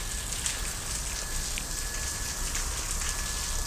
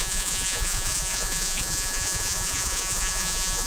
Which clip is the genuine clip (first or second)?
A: first